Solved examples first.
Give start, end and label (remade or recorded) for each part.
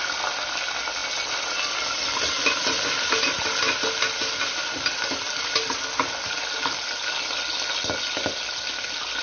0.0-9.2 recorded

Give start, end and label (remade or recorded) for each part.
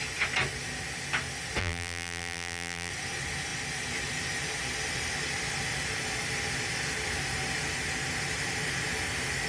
0.0-1.6 recorded; 1.6-2.9 remade; 2.9-9.5 recorded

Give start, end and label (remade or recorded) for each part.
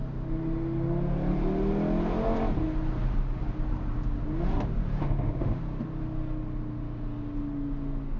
0.0-5.0 recorded; 5.0-5.6 remade; 5.6-8.2 recorded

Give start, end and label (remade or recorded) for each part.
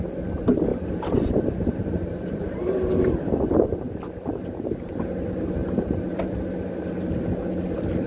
0.0-0.7 recorded; 0.7-3.5 remade; 3.5-5.6 recorded; 5.6-6.7 remade; 6.7-8.1 recorded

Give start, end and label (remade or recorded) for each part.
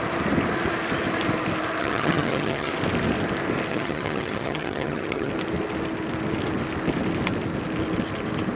0.0-1.8 recorded; 1.8-2.7 remade; 2.7-3.7 recorded; 3.7-5.3 remade; 5.3-8.6 recorded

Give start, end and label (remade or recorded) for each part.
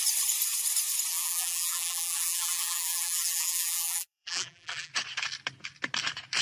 0.0-1.1 recorded; 1.1-4.9 remade; 4.9-6.4 recorded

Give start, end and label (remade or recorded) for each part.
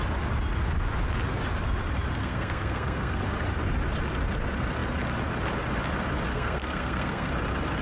0.0-2.2 recorded; 2.2-3.2 remade; 3.2-6.3 recorded; 6.3-7.3 remade; 7.3-7.8 recorded